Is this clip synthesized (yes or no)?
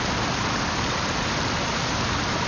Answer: no